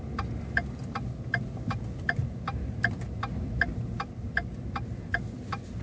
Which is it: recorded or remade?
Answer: recorded